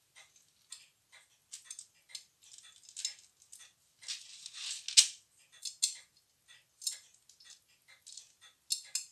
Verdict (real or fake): real